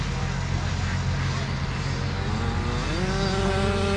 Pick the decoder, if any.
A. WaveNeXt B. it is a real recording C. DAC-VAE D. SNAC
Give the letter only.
B